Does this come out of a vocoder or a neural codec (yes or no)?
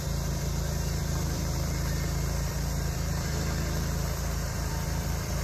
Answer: yes